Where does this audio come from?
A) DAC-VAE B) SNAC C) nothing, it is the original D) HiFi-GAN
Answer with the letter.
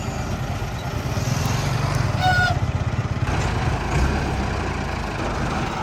C